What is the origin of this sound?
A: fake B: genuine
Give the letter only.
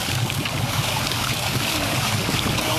A